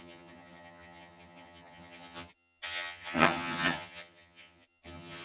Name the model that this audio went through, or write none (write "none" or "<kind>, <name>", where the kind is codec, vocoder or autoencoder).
vocoder, HiFi-GAN